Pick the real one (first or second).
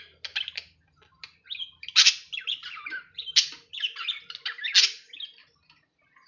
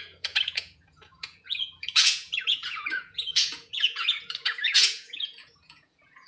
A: first